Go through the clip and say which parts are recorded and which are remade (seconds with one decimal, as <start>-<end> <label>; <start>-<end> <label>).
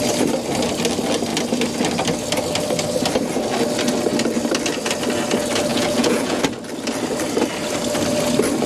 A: 0.0-5.7 recorded; 5.7-6.4 remade; 6.4-8.7 recorded